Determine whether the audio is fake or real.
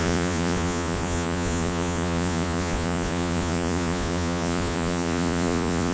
fake